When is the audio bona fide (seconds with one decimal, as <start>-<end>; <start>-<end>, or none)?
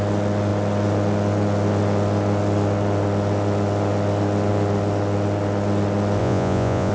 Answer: 0.0-6.2